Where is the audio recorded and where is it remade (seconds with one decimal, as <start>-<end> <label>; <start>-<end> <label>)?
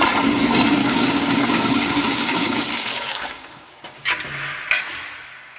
0.0-0.8 recorded; 0.8-4.2 remade; 4.2-5.6 recorded